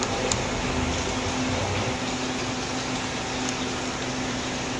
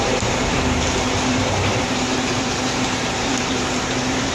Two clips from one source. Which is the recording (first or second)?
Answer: first